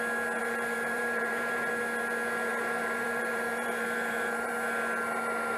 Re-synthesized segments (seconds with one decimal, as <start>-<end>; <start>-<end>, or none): 0.4-1.7; 2.5-4.5